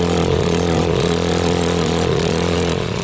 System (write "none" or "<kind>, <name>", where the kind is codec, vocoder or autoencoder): vocoder, Vocos